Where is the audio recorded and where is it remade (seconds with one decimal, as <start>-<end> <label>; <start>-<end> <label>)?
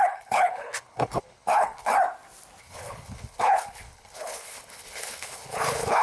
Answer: 0.0-1.9 remade; 1.9-2.6 recorded; 2.6-6.0 remade